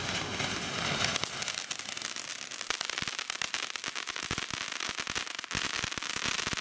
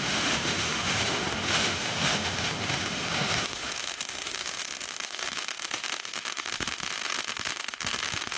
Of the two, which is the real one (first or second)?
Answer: first